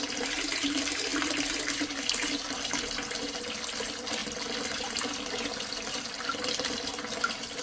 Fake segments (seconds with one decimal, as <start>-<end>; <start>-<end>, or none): 0.0-1.1; 3.8-4.2; 6.1-6.9